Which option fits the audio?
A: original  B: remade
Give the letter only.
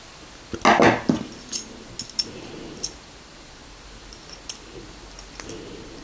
A